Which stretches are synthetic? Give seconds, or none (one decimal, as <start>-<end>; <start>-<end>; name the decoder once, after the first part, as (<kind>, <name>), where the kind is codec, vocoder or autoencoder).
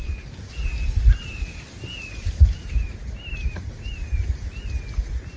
none